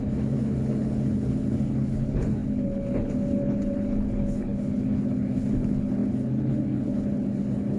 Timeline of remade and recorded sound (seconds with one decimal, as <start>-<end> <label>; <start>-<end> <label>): 0.0-7.8 remade